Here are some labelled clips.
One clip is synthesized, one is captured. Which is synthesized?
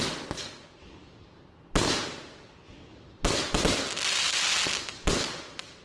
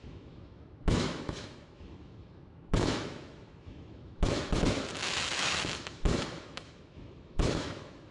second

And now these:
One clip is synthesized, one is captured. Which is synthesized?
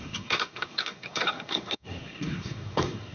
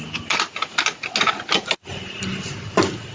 first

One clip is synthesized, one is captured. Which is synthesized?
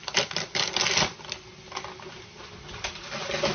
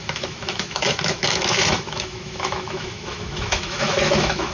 second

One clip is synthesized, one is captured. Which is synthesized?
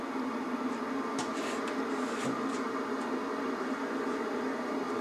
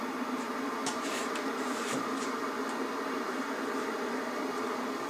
second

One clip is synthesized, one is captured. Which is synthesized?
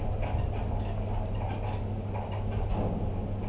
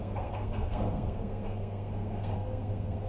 second